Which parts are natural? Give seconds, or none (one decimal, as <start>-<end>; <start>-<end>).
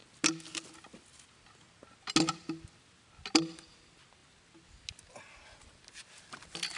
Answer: 0.0-6.8